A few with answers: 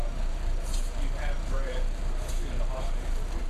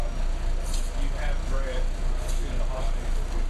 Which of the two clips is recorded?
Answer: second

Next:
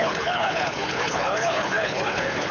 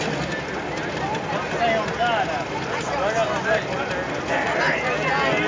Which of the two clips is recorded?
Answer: second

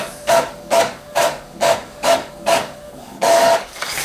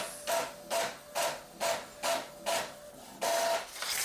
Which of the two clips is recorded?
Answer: second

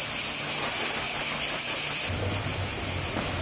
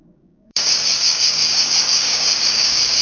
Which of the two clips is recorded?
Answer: first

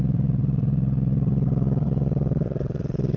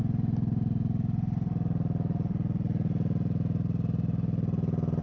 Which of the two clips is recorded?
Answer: second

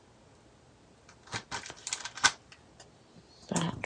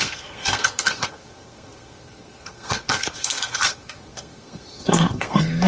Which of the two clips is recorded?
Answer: first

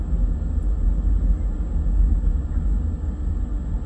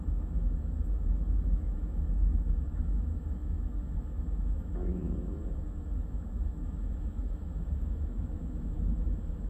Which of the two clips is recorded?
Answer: first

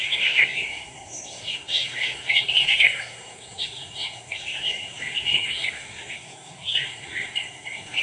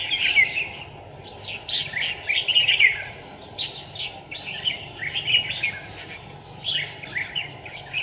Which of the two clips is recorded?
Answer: second